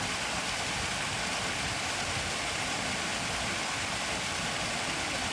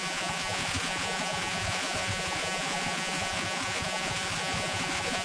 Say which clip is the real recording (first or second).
first